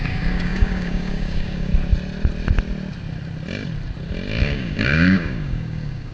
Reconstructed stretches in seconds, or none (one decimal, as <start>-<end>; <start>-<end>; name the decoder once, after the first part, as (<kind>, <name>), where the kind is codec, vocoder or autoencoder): 0.0-1.7 (codec, DAC); 4.4-6.1